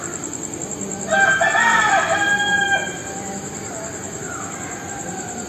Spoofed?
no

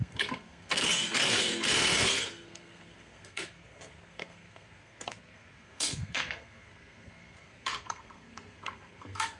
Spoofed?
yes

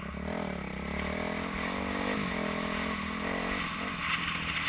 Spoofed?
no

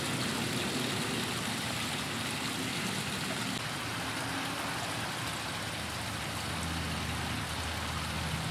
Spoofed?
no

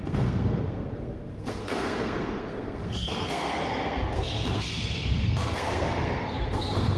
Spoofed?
yes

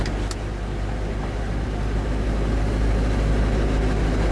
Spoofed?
no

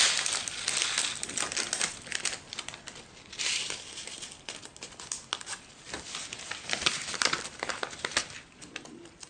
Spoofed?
no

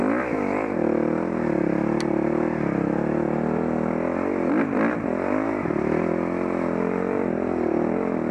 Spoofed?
no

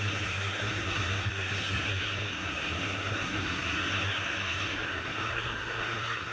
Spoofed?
yes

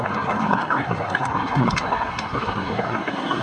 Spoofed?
yes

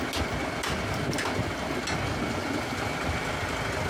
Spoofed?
no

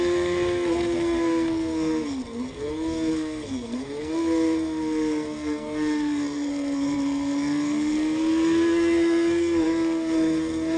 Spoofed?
yes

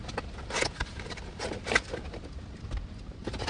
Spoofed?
no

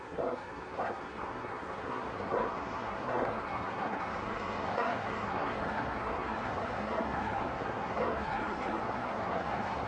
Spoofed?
yes